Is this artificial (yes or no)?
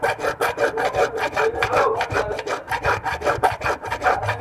no